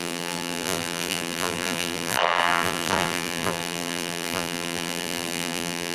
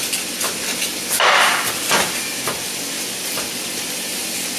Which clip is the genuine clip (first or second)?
second